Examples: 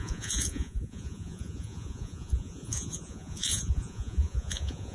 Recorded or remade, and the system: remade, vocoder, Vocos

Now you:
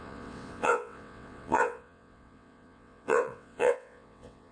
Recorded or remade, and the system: remade, vocoder, WaveNeXt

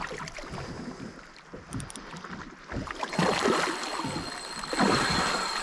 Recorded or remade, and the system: recorded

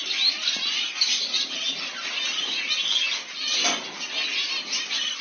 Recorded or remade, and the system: recorded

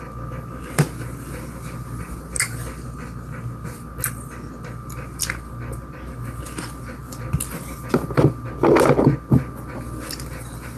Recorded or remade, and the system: recorded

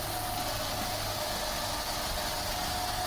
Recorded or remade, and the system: recorded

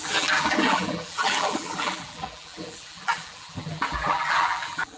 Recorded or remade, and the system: remade, vocoder, BigVGAN v2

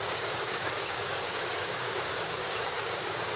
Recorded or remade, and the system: remade, codec, DAC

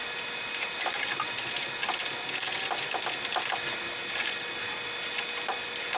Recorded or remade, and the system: recorded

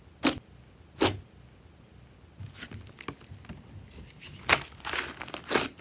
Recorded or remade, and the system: recorded